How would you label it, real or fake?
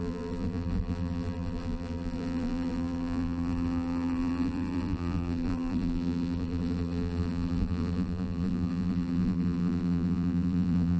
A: fake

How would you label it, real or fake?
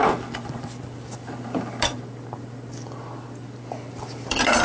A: fake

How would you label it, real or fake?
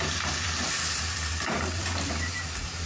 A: fake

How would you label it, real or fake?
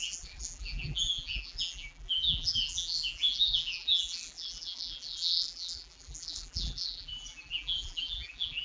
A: fake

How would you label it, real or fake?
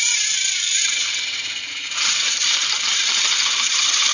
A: fake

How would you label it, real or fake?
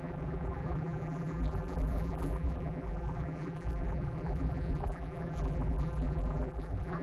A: fake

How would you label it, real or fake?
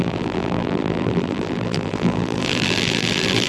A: fake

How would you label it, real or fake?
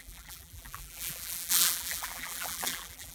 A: fake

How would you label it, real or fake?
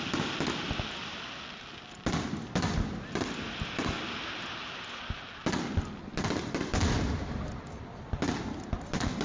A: real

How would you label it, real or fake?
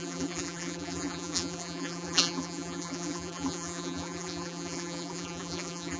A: fake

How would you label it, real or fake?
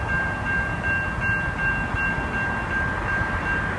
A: real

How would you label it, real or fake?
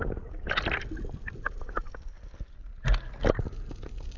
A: real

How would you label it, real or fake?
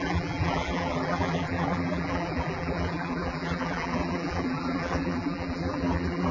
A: fake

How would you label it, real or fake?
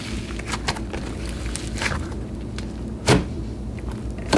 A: real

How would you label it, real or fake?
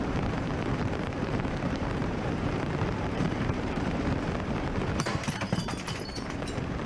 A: fake